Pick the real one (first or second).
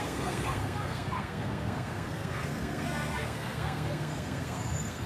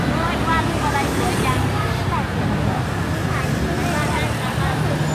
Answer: second